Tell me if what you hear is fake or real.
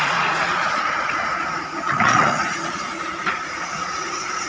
fake